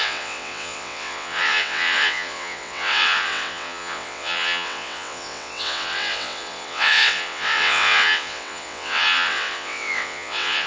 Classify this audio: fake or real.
fake